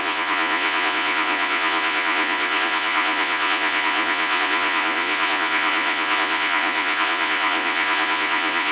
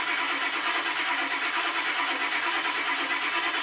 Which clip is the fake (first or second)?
first